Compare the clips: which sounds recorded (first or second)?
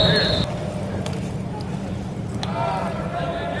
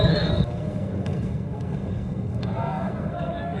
first